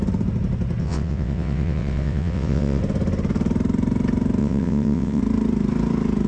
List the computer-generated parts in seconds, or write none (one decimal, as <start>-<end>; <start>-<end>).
0.8-2.8; 4.4-5.2